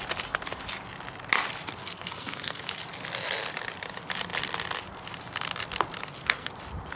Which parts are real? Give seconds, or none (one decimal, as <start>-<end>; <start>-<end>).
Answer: 0.0-1.8; 2.7-6.0; 6.5-7.0